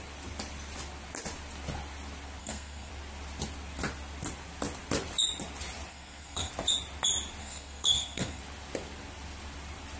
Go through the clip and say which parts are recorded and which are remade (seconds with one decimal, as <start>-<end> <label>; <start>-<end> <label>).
0.0-2.4 recorded; 2.4-2.9 remade; 2.9-5.9 recorded; 5.9-6.5 remade; 6.5-7.4 recorded; 7.4-8.4 remade; 8.4-10.0 recorded